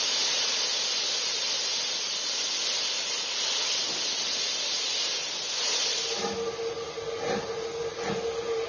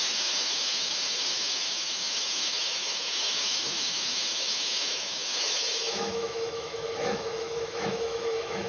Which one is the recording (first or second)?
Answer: first